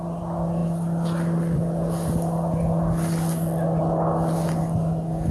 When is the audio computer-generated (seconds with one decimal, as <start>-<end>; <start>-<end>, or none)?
none